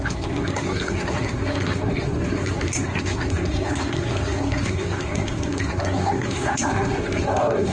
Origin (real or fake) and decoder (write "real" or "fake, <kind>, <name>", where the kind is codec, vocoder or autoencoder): fake, codec, SNAC